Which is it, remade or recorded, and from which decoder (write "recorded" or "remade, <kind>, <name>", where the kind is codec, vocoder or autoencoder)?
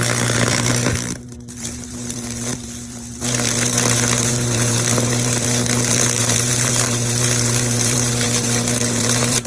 remade, vocoder, BigVGAN v2